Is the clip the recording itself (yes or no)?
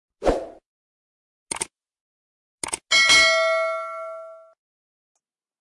yes